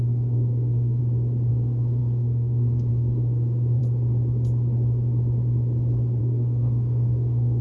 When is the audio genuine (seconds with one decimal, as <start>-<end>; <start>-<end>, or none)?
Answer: 1.0-1.5; 3.8-6.2